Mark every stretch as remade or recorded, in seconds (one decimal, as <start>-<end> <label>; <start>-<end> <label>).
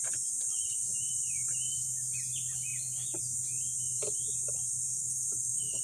0.0-5.0 recorded; 5.0-5.8 remade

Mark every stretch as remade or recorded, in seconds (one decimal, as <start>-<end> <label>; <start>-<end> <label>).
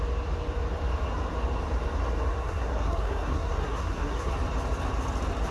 0.0-2.4 recorded; 2.4-4.3 remade; 4.3-5.5 recorded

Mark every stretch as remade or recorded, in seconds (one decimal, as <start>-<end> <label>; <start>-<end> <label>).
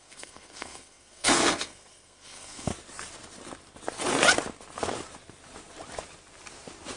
0.0-2.7 remade; 2.7-7.0 recorded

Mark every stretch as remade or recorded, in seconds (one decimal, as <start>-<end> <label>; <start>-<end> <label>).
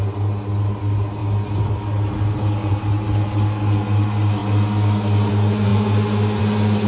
0.0-6.9 recorded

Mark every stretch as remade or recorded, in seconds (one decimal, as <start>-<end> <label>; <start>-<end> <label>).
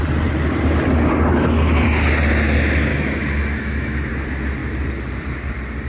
0.0-2.9 recorded; 2.9-4.1 remade; 4.1-5.9 recorded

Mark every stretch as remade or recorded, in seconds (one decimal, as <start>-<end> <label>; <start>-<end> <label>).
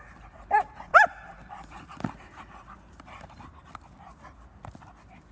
0.0-0.9 recorded; 0.9-3.7 remade; 3.7-5.3 recorded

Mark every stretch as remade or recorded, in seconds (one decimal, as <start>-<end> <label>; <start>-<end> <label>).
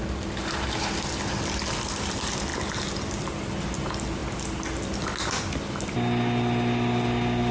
0.0-7.5 recorded